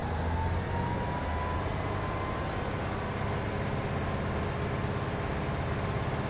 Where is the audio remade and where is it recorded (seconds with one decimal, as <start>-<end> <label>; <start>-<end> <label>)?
0.0-6.3 recorded